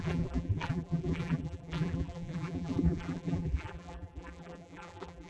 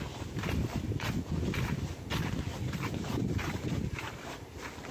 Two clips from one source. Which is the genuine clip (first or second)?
second